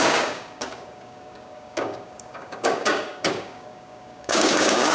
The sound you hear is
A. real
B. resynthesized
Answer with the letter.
B